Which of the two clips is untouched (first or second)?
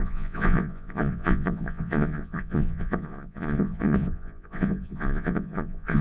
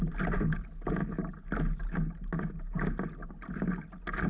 second